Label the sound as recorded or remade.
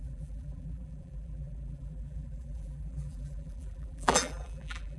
remade